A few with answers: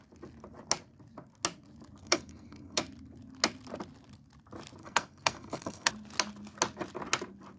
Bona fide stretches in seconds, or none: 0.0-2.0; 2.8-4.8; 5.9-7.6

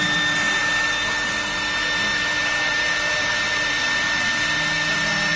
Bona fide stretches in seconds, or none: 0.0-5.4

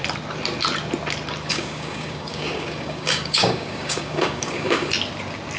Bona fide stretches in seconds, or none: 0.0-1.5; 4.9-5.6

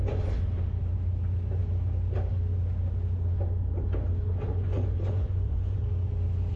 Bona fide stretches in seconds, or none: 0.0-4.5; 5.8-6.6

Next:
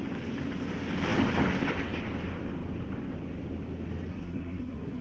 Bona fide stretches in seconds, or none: 0.0-4.1

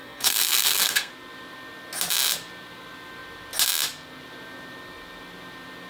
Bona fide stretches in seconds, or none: 1.1-5.9

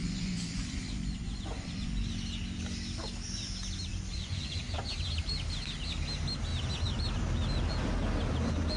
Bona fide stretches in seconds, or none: 2.1-3.9; 4.6-8.8